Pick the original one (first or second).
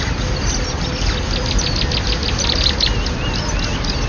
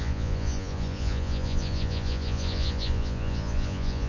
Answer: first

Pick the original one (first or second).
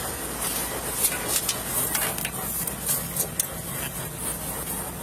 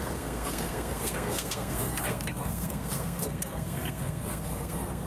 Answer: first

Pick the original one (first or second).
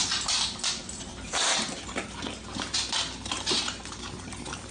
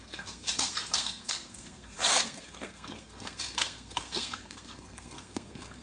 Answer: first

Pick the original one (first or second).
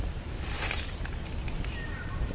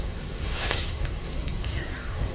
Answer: first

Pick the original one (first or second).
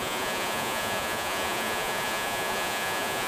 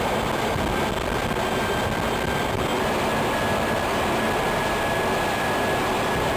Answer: second